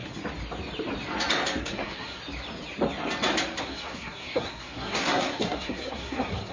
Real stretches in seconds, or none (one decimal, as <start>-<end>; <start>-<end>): 0.0-1.6; 2.2-3.6

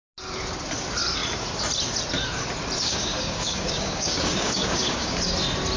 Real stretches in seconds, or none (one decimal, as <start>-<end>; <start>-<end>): 0.0-2.8; 5.3-5.8